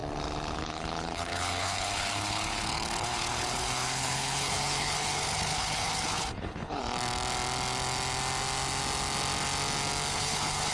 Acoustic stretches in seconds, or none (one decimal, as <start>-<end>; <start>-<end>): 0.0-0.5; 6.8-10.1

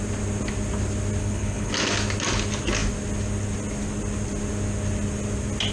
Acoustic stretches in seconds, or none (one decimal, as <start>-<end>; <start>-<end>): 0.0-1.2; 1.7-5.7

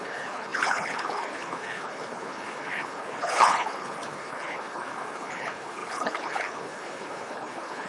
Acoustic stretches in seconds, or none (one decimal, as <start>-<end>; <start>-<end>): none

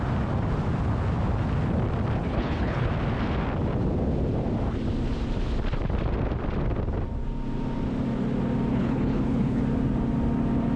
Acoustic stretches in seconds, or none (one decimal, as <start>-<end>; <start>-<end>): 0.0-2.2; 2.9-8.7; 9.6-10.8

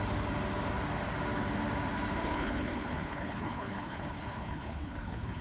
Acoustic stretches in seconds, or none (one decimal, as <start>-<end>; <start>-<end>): 0.0-2.2